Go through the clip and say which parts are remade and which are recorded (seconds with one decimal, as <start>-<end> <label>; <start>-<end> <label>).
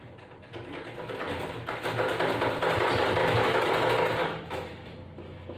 0.0-3.2 recorded; 3.2-3.7 remade; 3.7-4.2 recorded; 4.2-5.6 remade